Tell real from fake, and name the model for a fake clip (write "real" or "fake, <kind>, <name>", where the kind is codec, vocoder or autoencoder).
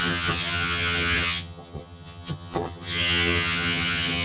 fake, vocoder, HiFi-GAN